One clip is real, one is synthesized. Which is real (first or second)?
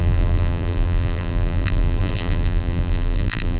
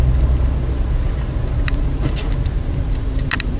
second